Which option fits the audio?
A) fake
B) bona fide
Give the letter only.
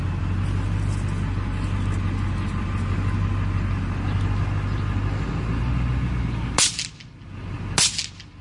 B